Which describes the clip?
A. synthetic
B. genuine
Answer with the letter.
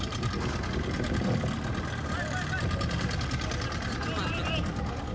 B